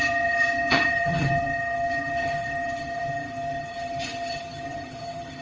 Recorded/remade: remade